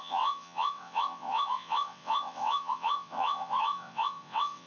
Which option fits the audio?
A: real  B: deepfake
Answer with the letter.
B